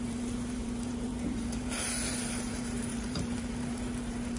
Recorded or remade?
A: remade